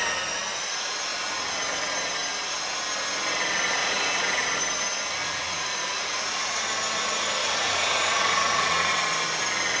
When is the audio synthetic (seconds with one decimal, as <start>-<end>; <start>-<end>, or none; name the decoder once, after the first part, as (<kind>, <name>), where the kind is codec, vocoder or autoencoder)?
3.8-4.6 (vocoder, Vocos); 5.2-6.6; 7.4-8.9